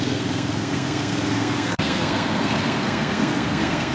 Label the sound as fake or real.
fake